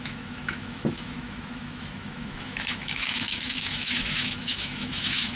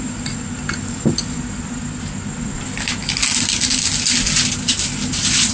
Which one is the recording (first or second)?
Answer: second